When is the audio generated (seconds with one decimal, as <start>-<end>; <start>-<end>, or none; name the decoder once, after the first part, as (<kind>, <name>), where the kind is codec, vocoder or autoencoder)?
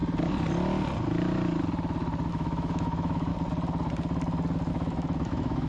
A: 2.3-3.3 (autoencoder, DAC-VAE); 4.7-5.7